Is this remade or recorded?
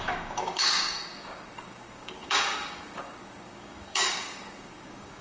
remade